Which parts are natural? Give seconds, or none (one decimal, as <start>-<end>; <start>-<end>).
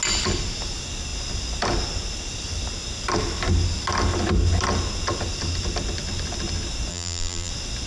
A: 0.0-6.9; 7.5-7.9